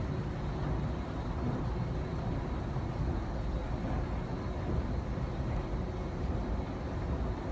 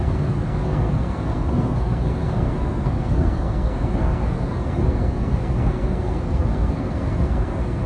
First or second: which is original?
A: first